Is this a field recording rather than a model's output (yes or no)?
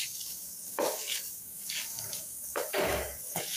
no